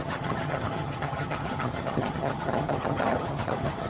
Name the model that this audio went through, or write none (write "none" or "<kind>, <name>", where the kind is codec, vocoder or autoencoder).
vocoder, HiFi-GAN